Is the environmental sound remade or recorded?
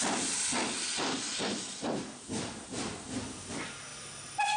recorded